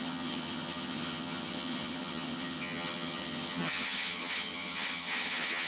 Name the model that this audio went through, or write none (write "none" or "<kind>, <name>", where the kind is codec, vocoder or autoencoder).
vocoder, HiFi-GAN